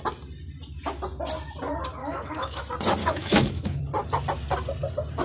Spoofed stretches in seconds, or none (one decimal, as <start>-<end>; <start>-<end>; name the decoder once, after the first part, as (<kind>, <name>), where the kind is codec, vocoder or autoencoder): 2.0-2.6 (autoencoder, DAC-VAE); 3.0-3.8